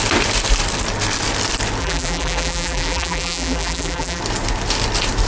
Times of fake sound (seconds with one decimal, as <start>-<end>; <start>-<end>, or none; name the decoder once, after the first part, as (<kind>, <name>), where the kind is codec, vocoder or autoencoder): 1.8-4.2 (vocoder, BigVGAN v2)